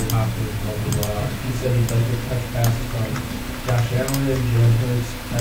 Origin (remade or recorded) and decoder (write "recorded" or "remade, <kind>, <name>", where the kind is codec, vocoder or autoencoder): recorded